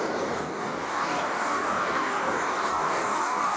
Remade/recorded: remade